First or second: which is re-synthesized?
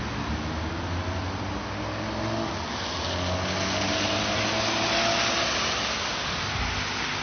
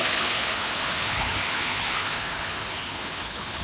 second